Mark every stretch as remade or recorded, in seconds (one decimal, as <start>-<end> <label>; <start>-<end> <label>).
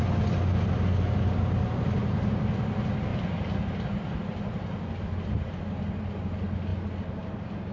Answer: 0.0-7.7 recorded